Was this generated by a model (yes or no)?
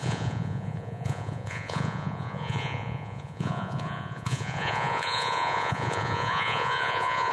yes